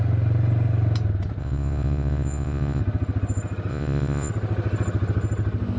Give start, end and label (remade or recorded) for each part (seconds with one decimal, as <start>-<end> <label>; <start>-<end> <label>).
0.0-1.4 recorded; 1.4-2.8 remade; 2.8-3.7 recorded; 3.7-4.3 remade; 4.3-5.8 recorded